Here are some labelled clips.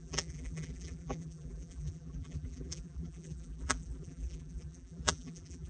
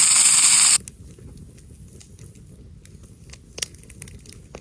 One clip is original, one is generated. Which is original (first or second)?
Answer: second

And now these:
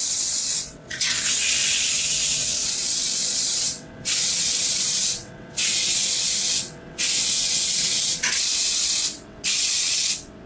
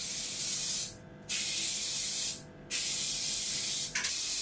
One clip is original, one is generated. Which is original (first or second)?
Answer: second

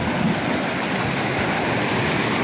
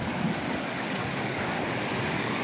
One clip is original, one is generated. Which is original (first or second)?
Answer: first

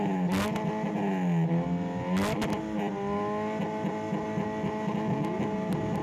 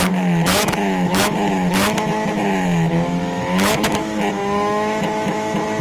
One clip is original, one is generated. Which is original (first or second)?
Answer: first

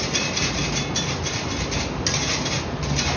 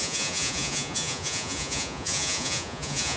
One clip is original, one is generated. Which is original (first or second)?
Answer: first